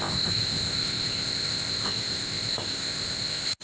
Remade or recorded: remade